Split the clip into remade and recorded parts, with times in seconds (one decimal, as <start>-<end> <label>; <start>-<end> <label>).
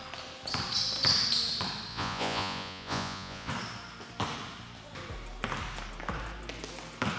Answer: 0.0-1.9 recorded; 1.9-3.5 remade; 3.5-7.2 recorded